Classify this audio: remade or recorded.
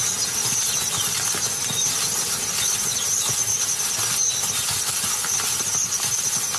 recorded